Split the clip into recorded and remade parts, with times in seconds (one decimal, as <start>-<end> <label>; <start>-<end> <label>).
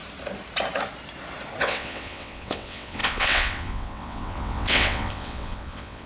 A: 0.0-1.6 recorded; 1.6-6.1 remade